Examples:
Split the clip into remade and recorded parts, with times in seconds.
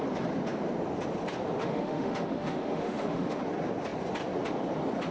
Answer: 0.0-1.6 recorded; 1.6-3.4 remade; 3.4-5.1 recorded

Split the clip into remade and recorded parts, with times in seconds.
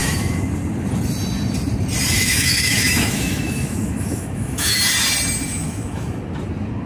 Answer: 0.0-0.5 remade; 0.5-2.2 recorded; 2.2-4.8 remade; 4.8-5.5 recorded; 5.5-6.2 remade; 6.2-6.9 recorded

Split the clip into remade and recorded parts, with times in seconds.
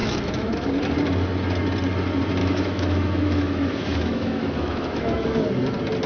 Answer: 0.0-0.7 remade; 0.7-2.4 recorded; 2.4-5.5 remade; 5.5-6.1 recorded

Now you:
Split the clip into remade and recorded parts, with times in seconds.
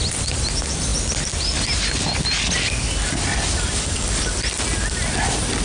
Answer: 0.0-5.6 recorded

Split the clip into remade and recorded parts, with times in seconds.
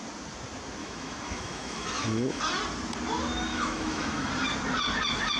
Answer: 0.0-0.8 recorded; 0.8-2.4 remade; 2.4-3.5 recorded; 3.5-4.3 remade; 4.3-5.4 recorded